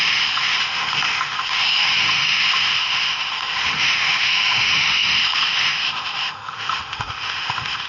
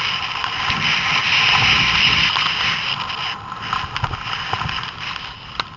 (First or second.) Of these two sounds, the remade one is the first